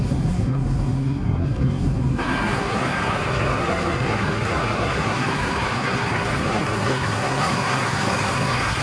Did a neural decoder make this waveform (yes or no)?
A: yes